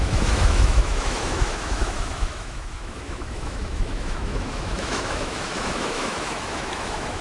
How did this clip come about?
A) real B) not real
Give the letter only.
B